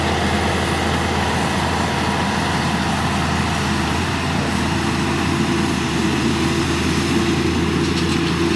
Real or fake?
real